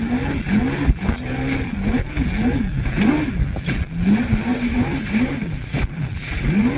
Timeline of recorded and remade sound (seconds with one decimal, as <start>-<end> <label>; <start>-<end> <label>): 0.0-4.5 recorded; 4.5-5.3 remade; 5.3-6.8 recorded